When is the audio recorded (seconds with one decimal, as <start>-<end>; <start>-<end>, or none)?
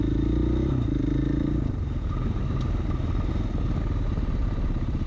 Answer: 0.0-4.4